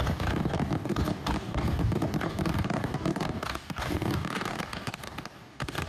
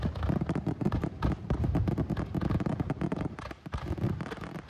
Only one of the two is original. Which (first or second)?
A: second